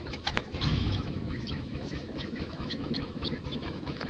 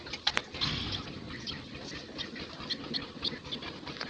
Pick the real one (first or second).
second